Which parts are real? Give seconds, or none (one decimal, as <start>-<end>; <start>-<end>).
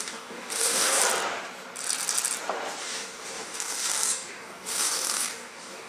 1.0-2.8